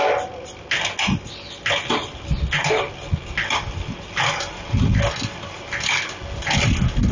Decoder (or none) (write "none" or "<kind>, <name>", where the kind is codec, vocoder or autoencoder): none